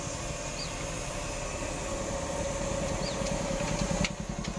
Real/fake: real